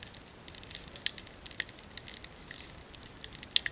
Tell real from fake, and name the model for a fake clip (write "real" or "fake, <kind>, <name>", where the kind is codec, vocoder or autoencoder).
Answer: real